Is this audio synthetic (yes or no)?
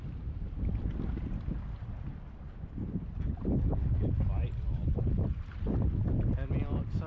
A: no